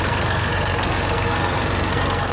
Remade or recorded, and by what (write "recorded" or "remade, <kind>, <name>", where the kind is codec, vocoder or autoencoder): remade, codec, SNAC